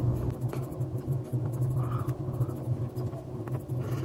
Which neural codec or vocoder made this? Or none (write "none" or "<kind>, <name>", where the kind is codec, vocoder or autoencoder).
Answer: none